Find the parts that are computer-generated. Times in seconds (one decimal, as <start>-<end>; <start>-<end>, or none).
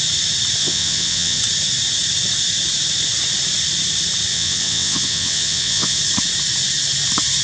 0.6-1.4; 4.3-6.0